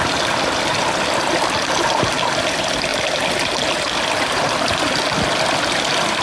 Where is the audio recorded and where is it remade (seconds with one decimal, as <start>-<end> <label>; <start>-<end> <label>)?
0.0-6.2 recorded